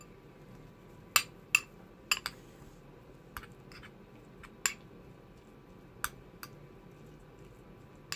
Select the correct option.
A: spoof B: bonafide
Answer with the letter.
B